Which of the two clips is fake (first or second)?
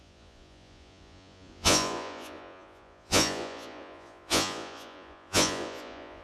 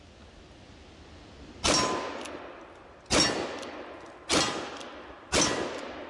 first